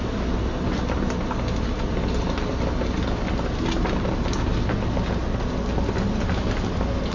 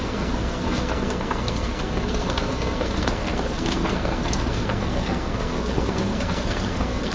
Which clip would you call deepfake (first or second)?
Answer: second